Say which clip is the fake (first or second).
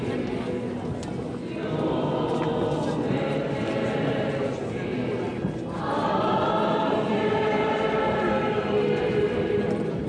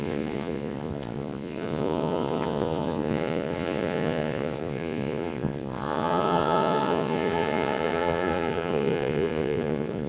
second